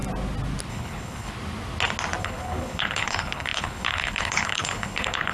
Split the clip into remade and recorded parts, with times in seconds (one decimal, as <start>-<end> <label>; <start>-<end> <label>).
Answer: 0.0-0.7 recorded; 0.7-1.3 remade; 1.3-2.2 recorded; 2.2-5.3 remade